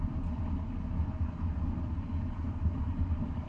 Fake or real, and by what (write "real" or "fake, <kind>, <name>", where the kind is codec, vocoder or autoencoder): real